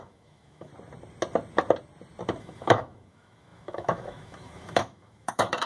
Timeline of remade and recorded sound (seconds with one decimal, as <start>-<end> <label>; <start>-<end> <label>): 0.0-0.7 remade; 0.7-2.4 recorded; 2.4-5.7 remade